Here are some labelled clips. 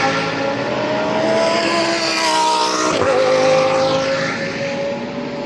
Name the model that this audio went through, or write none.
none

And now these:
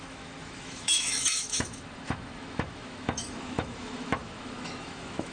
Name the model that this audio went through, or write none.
autoencoder, DAC-VAE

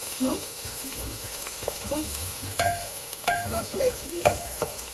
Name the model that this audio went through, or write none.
autoencoder, DAC-VAE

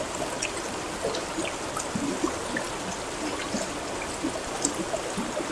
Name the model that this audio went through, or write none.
none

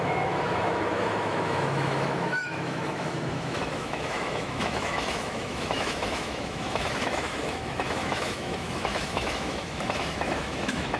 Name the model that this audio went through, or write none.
autoencoder, DAC-VAE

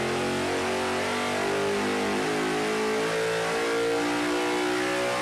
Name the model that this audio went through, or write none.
none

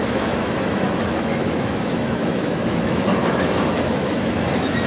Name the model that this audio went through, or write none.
autoencoder, DAC-VAE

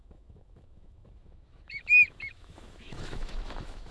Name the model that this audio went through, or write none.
autoencoder, DAC-VAE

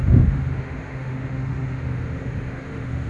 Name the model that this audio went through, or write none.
autoencoder, DAC-VAE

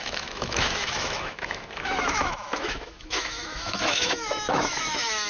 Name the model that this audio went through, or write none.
autoencoder, DAC-VAE